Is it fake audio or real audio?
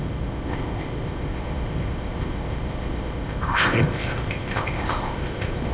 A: fake